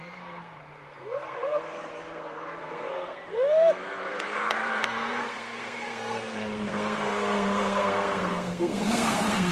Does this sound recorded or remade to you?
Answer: remade